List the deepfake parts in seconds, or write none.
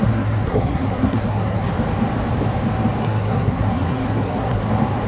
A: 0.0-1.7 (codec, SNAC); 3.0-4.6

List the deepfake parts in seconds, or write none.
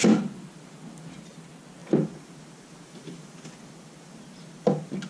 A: none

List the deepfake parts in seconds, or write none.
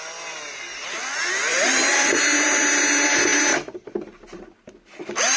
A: 1.5-2.2 (vocoder, BigVGAN v2)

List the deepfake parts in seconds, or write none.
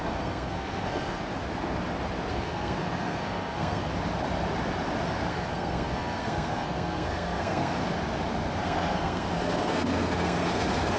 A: 0.0-1.2 (codec, SNAC); 2.3-3.9; 5.3-7.8; 8.6-11.0